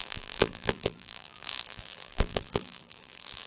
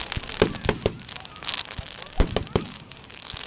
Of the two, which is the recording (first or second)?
second